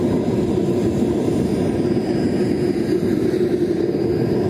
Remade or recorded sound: recorded